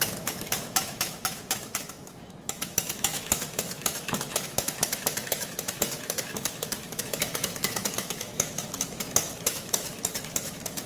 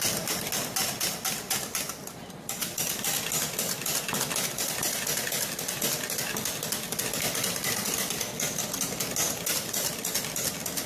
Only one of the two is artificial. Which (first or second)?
first